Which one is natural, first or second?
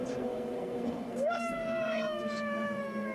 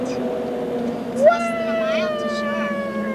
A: second